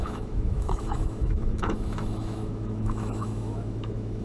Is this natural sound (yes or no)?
no